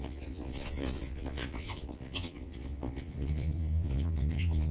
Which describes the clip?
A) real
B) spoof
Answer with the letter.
B